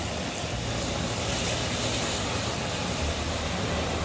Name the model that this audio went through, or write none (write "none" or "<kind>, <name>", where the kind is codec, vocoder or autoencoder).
none